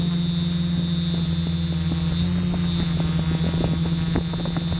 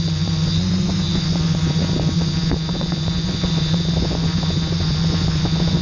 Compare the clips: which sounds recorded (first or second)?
first